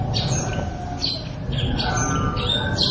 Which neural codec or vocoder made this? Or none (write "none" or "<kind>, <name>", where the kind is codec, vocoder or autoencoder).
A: none